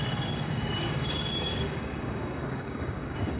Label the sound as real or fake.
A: fake